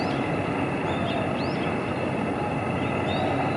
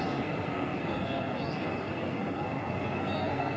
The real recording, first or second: first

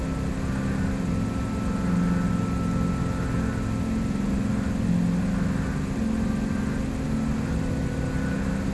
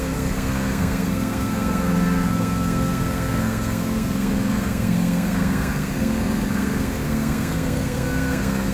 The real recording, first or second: first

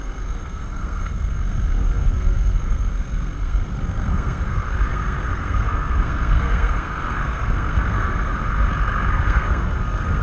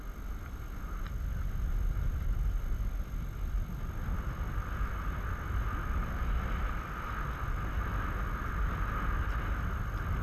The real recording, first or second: second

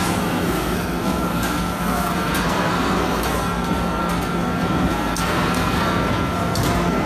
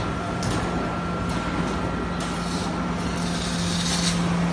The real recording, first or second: second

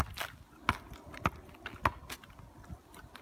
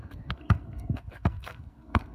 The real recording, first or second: first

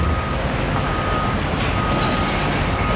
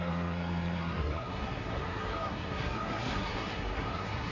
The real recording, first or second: first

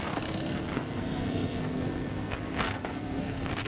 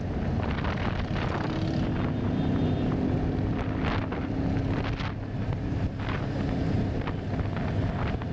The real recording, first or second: second